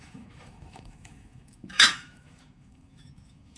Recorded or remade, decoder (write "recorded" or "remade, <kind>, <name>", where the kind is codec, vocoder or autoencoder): remade, autoencoder, DAC-VAE